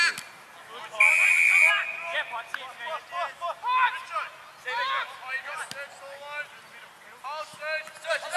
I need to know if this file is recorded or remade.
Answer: recorded